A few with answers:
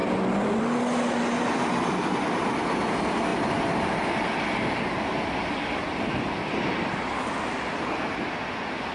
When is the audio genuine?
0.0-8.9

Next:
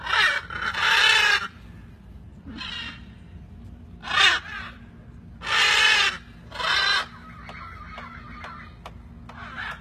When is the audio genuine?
0.0-2.3; 4.8-9.8

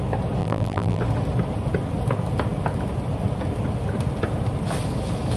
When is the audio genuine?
0.0-0.4; 1.0-5.4

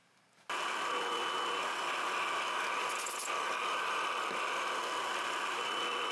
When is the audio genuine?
0.0-6.1

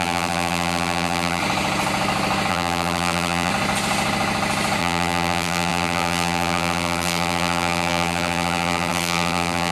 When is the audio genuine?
1.4-2.5; 3.5-4.8

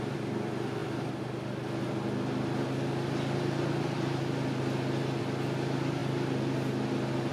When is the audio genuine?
0.0-7.3

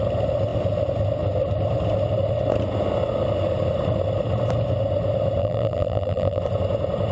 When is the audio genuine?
0.0-5.4; 6.4-7.1